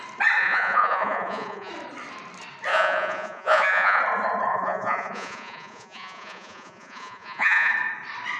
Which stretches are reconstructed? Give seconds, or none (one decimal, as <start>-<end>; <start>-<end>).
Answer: 0.4-1.7; 2.7-4.0; 4.5-7.7